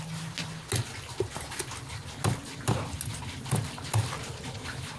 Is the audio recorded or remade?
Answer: recorded